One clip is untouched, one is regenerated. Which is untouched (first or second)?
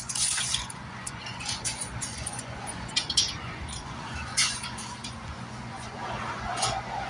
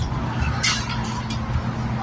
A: second